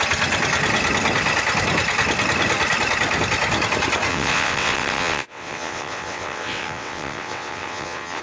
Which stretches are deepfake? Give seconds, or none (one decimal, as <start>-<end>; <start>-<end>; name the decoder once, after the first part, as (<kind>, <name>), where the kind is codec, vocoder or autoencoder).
4.1-8.2 (vocoder, WaveNeXt)